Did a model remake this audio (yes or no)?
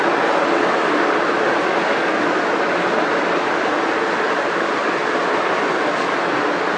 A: no